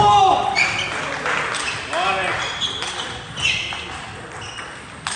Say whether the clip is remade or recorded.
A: recorded